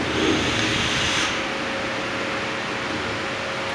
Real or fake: real